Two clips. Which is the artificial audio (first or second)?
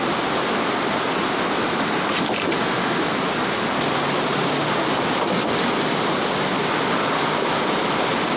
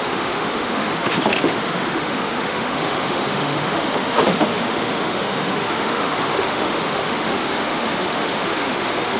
second